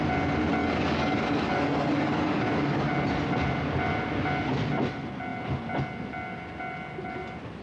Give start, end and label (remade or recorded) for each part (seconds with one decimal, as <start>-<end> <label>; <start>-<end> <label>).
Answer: 0.0-0.6 recorded; 0.6-2.9 remade; 2.9-7.6 recorded